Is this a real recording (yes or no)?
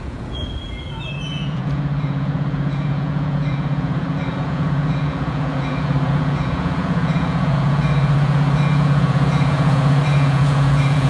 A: no